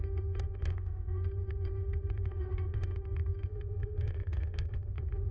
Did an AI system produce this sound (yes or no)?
yes